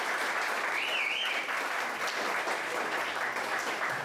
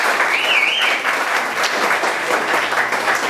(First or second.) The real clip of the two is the second